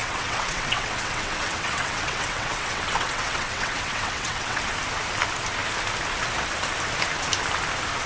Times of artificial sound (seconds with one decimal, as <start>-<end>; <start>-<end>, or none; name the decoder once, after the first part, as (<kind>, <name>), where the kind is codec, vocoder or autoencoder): 0.0-4.6 (vocoder, WaveNeXt)